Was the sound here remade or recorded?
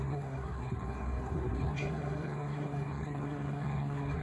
remade